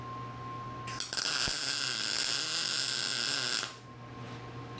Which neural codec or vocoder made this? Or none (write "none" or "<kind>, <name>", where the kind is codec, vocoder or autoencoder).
none